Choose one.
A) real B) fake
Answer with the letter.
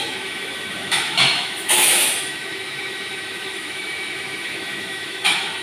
B